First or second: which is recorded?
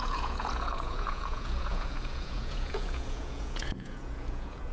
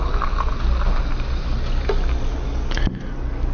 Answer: second